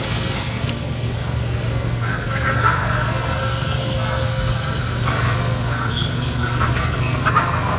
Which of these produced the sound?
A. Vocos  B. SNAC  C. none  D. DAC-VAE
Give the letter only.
B